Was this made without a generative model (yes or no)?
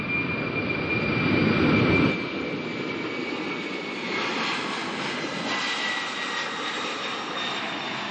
yes